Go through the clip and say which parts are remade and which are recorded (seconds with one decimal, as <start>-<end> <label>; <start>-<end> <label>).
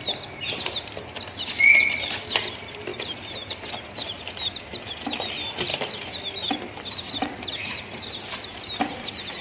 0.0-2.9 recorded; 2.9-4.8 remade; 4.8-5.7 recorded; 5.7-6.6 remade; 6.6-9.4 recorded